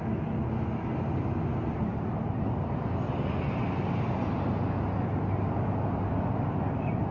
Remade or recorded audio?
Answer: recorded